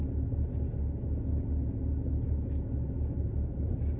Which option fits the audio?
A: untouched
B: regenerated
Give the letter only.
A